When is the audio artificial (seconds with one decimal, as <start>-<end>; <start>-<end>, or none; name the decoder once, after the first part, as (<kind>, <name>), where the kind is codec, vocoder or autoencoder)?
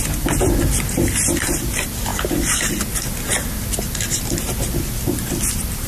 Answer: none